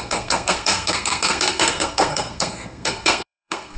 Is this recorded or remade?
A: remade